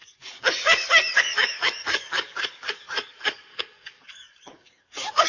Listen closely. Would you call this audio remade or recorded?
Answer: remade